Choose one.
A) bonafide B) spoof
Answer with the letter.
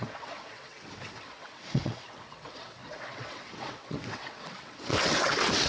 B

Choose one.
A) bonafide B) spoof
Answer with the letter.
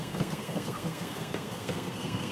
B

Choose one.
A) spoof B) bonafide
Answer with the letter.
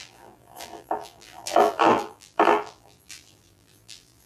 A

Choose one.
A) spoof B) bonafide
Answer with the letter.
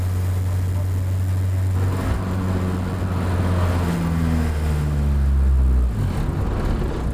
B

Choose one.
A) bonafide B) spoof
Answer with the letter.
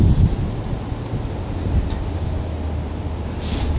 A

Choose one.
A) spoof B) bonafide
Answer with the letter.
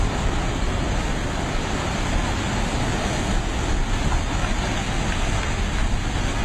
B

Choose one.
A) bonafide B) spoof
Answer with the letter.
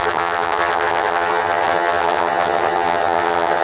B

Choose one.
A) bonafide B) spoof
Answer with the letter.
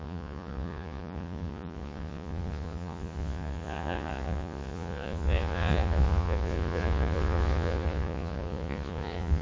B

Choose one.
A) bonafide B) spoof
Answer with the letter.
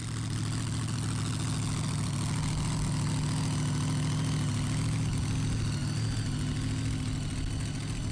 A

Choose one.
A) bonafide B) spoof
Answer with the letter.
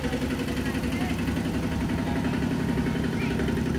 A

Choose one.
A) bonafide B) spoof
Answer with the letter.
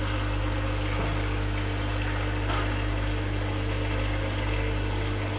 A